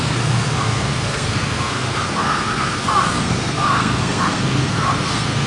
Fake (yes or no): yes